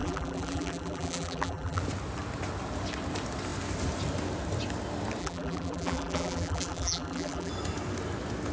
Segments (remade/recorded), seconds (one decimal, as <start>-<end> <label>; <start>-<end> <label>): 0.0-1.8 remade; 1.8-5.2 recorded; 5.2-7.5 remade; 7.5-8.5 recorded